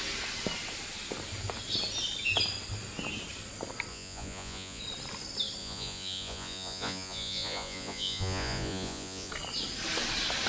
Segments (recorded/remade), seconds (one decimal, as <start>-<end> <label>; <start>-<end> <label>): 0.0-3.9 recorded; 3.9-4.8 remade; 4.8-5.6 recorded; 5.6-9.3 remade; 9.3-10.5 recorded